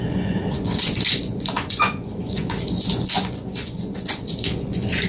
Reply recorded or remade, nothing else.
remade